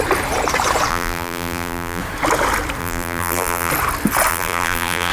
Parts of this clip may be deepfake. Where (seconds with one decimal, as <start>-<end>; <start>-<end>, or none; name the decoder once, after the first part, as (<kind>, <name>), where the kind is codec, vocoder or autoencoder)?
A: 0.9-2.0 (vocoder, BigVGAN v2); 2.8-3.7; 4.3-5.1